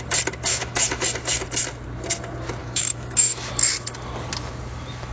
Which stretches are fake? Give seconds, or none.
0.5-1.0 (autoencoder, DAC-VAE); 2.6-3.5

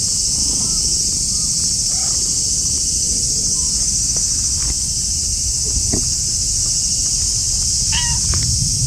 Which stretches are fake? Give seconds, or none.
none

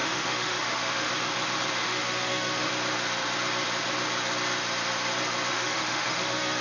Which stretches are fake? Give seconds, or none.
0.0-1.1 (autoencoder, DAC-VAE); 1.8-2.7; 5.5-6.6

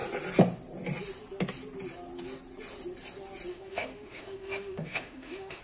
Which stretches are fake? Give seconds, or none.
3.5-5.6 (autoencoder, DAC-VAE)

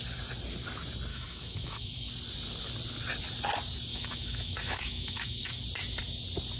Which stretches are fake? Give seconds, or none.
1.1-2.1 (autoencoder, DAC-VAE); 3.9-5.6